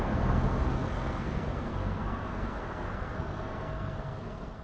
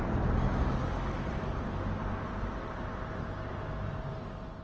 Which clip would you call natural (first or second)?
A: second